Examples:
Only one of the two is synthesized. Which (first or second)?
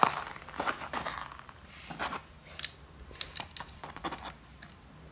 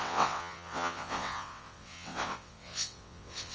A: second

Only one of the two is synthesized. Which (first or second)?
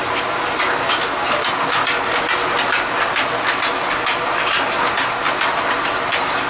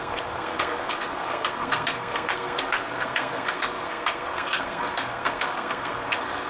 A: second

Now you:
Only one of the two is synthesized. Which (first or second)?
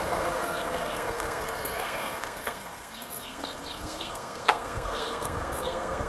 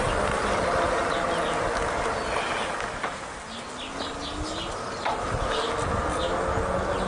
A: first